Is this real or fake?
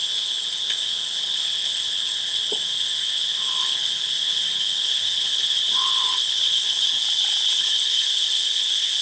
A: fake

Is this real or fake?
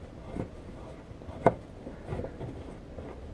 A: real